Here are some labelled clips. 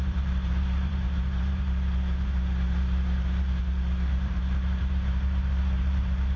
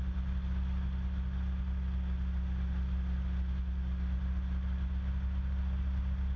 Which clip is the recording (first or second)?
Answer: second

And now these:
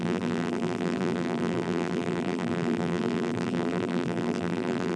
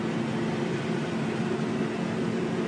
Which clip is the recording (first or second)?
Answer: second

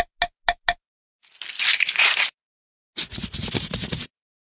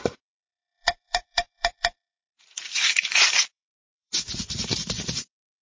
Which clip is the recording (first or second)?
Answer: first